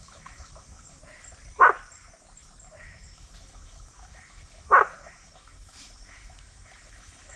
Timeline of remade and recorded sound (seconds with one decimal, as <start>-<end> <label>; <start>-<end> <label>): 0.0-1.0 remade; 1.0-2.8 recorded; 2.8-7.4 remade